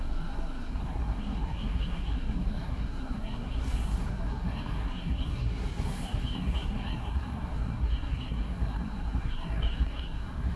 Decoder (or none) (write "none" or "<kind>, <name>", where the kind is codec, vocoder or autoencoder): codec, SNAC